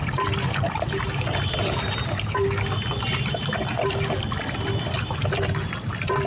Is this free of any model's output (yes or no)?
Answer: yes